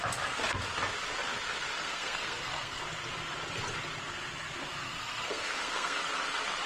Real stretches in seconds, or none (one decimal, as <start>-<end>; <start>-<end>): 0.0-1.8; 2.8-4.8; 6.0-6.7